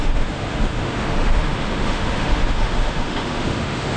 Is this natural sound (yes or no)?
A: no